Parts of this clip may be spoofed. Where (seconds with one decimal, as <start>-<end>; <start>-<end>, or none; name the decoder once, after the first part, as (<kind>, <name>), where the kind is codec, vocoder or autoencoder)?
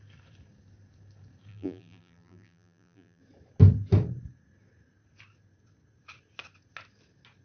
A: 1.5-3.2 (vocoder, BigVGAN v2)